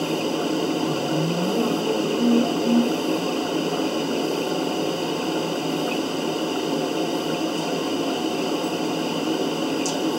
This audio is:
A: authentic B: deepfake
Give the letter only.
A